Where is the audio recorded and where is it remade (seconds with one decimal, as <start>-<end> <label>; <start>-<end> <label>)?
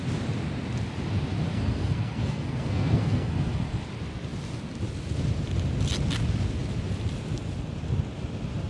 0.0-1.5 recorded; 1.5-3.6 remade; 3.6-8.7 recorded